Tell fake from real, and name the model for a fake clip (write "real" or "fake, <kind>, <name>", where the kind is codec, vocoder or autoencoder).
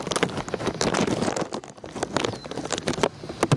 real